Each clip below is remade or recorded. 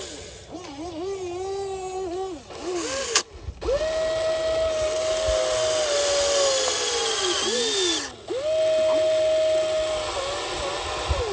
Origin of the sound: recorded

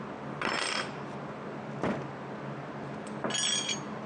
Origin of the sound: recorded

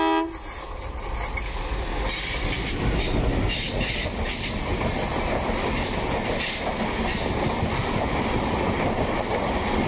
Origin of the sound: recorded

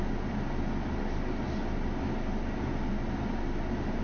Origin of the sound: recorded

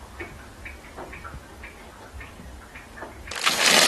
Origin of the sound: recorded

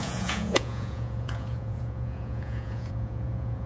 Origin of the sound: remade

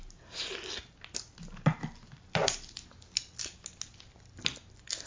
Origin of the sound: recorded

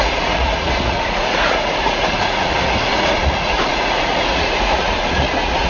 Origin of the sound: remade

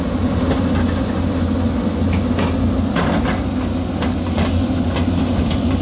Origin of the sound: recorded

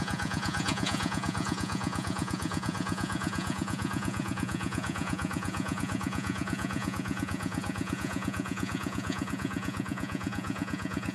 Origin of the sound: remade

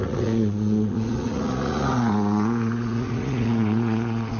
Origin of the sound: remade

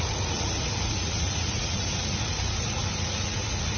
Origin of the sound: remade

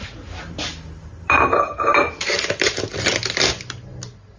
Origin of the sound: recorded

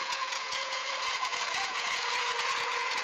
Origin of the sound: remade